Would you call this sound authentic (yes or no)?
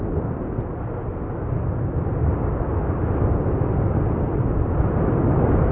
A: yes